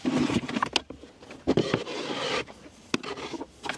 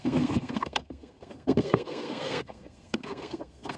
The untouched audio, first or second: first